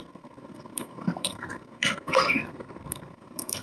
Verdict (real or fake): fake